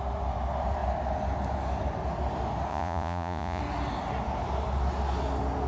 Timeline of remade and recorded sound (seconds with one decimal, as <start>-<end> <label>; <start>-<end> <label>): 0.0-2.7 recorded; 2.7-3.6 remade; 3.6-5.7 recorded